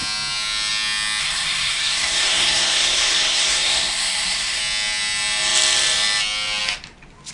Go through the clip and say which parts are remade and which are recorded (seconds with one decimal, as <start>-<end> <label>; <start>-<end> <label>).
0.0-1.2 recorded; 1.2-4.6 remade; 4.6-7.3 recorded